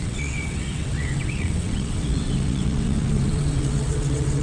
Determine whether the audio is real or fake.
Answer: fake